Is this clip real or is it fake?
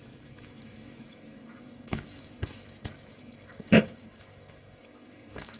fake